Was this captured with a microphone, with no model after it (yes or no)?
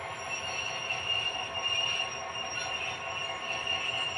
yes